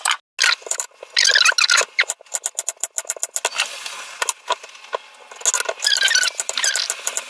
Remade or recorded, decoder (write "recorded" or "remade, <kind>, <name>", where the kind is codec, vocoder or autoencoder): recorded